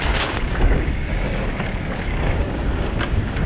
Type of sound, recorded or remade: remade